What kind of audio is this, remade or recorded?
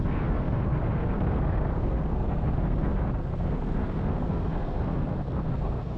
remade